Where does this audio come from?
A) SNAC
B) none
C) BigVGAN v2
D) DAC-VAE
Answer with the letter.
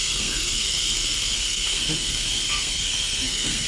A